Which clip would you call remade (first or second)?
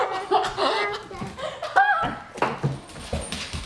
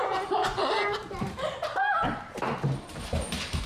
second